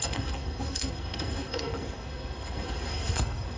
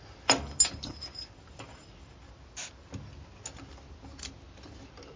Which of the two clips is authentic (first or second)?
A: second